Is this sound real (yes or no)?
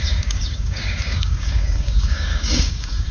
no